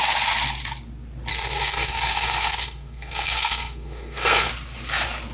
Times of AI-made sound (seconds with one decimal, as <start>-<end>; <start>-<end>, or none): 1.3-4.5